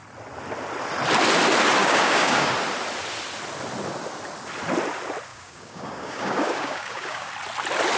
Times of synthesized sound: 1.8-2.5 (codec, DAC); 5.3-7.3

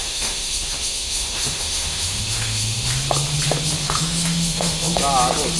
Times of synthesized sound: 0.0-2.9 (autoencoder, DAC-VAE); 3.8-5.0

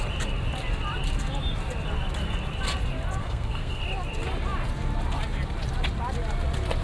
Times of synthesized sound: 3.2-3.8 (codec, SNAC)